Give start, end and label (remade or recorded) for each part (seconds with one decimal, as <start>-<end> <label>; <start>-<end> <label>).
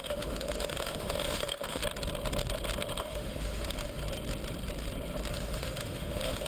0.0-1.8 remade; 1.8-3.0 recorded; 3.0-4.0 remade; 4.0-5.3 recorded; 5.3-6.5 remade